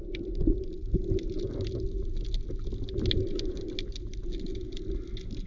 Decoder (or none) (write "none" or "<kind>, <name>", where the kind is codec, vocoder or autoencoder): none